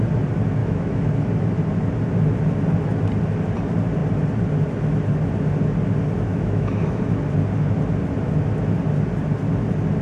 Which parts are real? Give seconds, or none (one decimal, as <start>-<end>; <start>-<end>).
0.0-0.6; 1.3-6.3; 7.0-10.0